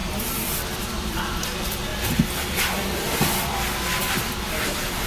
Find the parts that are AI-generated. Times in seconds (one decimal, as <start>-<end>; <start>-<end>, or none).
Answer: 0.0-1.9; 4.1-5.1